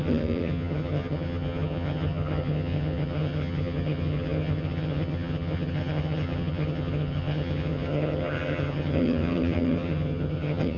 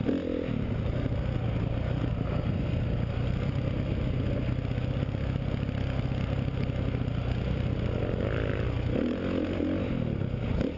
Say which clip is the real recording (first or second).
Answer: second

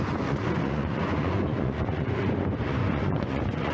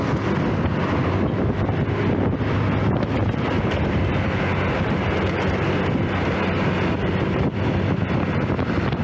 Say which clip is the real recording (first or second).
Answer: second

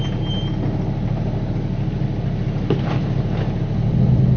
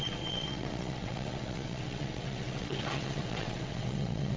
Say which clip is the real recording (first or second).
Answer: first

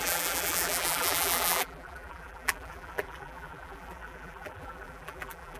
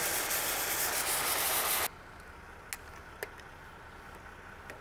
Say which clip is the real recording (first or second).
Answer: second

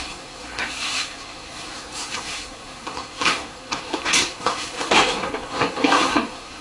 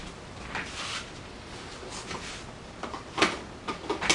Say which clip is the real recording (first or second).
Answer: second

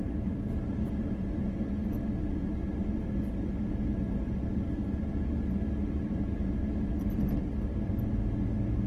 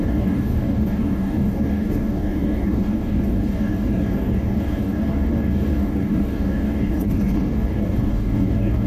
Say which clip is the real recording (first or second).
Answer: first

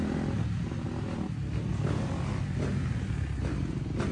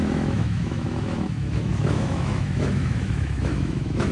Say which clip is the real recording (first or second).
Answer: first